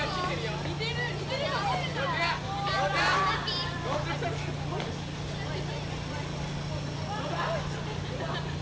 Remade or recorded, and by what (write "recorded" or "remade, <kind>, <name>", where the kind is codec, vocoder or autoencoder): recorded